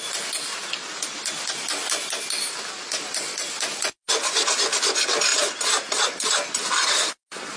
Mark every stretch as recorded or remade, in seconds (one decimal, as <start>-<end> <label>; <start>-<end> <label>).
0.0-7.6 recorded